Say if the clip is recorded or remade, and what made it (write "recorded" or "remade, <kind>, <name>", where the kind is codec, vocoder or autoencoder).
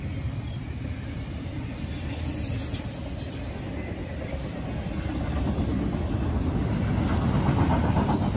recorded